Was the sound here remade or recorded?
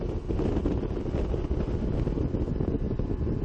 recorded